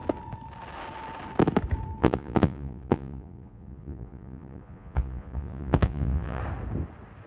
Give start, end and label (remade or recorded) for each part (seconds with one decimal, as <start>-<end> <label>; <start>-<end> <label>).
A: 0.0-2.0 recorded; 2.0-6.4 remade; 6.4-7.3 recorded